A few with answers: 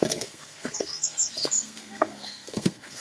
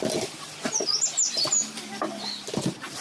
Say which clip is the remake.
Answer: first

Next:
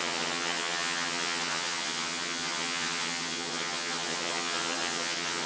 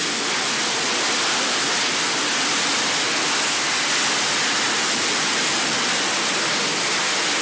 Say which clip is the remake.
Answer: first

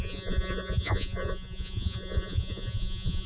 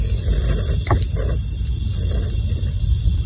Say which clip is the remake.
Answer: first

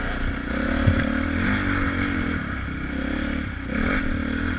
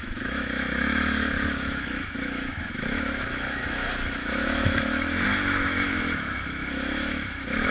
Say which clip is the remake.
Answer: second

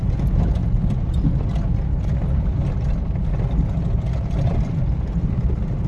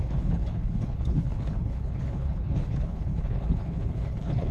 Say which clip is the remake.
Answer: second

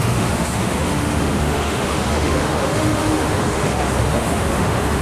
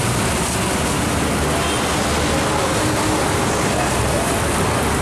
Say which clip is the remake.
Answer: first